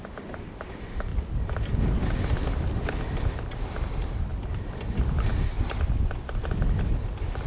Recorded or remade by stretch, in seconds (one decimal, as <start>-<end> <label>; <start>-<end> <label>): 0.0-1.1 recorded; 1.1-1.6 remade; 1.6-7.5 recorded